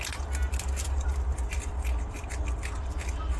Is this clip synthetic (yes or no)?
yes